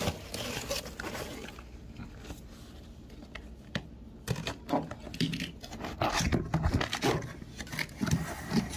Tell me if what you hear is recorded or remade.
recorded